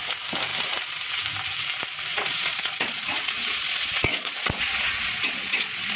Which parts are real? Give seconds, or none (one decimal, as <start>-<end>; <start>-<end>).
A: 0.0-2.1